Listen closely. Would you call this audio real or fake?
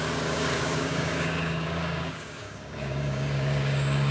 fake